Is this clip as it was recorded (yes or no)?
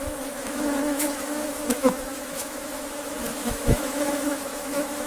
no